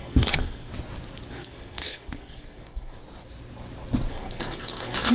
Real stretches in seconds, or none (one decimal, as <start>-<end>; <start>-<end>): 0.7-1.3; 3.0-4.1